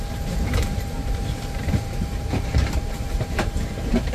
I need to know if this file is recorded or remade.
remade